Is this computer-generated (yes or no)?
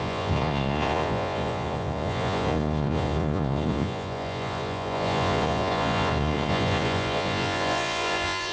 yes